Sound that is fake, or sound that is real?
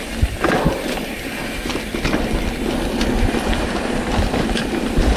real